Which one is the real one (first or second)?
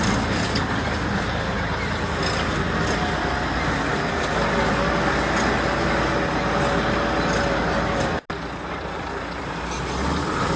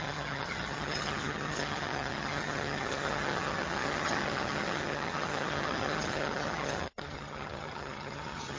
first